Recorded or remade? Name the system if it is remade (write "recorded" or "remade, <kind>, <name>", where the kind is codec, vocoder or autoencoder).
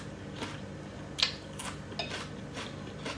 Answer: recorded